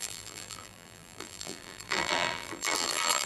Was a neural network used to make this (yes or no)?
yes